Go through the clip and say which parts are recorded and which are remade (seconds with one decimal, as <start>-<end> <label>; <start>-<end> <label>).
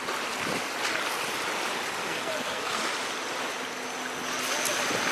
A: 0.0-2.0 recorded; 2.0-2.8 remade; 2.8-5.1 recorded